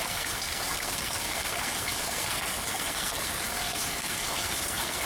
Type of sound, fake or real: fake